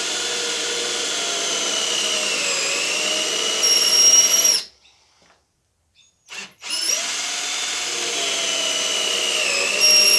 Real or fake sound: real